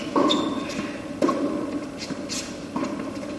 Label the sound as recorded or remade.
recorded